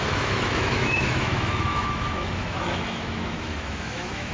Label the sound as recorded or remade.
remade